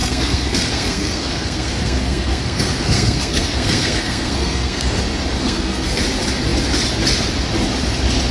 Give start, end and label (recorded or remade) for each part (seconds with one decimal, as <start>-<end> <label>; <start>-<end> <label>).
0.0-5.0 remade; 5.0-5.4 recorded; 5.4-6.0 remade; 6.0-8.3 recorded